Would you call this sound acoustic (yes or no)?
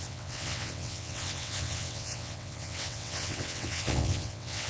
no